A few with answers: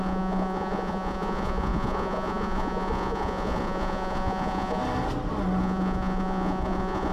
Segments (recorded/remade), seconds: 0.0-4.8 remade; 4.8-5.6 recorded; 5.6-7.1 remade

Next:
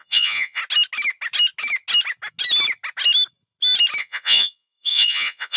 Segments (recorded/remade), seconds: 0.0-0.6 remade; 0.6-4.0 recorded; 4.0-5.6 remade

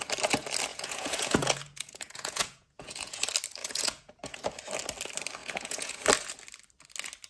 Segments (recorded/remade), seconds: 0.0-0.7 recorded; 0.7-3.2 remade; 3.2-3.6 recorded; 3.6-4.4 remade; 4.4-5.4 recorded; 5.4-6.0 remade; 6.0-7.3 recorded

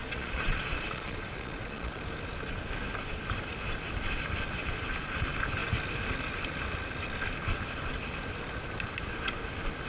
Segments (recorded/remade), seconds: 0.0-2.0 remade; 2.0-9.9 recorded

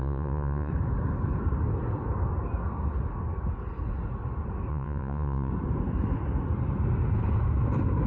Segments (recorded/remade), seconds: 0.0-0.7 remade; 0.7-4.7 recorded; 4.7-5.5 remade; 5.5-8.1 recorded

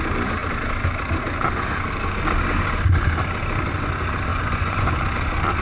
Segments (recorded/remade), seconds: 0.0-4.3 recorded; 4.3-4.9 remade; 4.9-5.6 recorded